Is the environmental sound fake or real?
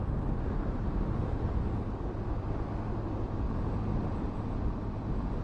real